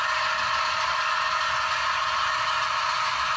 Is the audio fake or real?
real